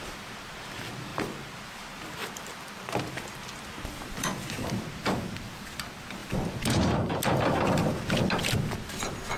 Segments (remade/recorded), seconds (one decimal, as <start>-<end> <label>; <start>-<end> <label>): 0.0-2.2 recorded; 2.2-4.7 remade; 4.7-6.2 recorded; 6.2-7.2 remade; 7.2-9.4 recorded